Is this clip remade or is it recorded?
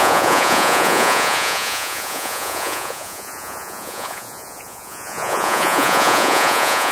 remade